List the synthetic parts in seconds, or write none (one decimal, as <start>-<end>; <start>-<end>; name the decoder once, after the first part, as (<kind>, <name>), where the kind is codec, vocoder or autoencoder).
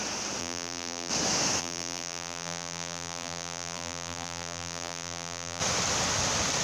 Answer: 0.4-1.1 (vocoder, BigVGAN v2); 1.6-5.6